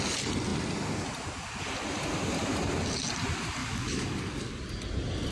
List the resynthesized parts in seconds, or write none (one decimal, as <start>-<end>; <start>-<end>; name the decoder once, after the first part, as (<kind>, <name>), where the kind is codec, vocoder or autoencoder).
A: 3.6-4.5 (codec, DAC)